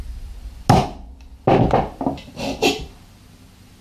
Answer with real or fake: real